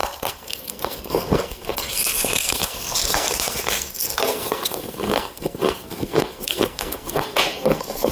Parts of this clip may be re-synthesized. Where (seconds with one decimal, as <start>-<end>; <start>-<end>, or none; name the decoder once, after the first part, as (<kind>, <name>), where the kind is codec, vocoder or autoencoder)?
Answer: 0.0-8.1 (codec, SNAC)